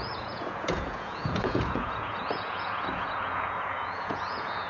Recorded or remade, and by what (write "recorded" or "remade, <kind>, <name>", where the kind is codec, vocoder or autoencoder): remade, vocoder, Vocos